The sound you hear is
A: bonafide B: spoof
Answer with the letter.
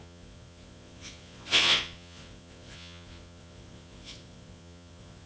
B